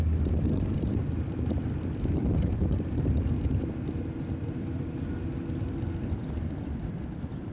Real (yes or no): yes